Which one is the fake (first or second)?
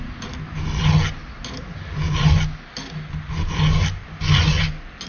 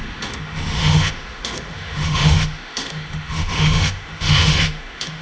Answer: second